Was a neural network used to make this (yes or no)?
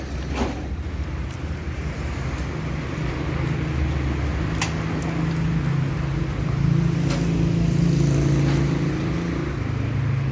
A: no